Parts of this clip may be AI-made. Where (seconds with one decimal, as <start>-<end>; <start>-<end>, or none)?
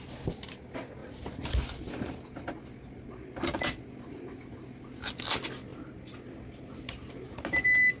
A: none